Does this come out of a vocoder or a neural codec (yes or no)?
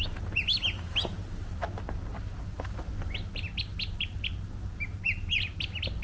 no